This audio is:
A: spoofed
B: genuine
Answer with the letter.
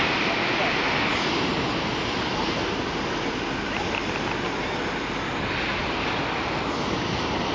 B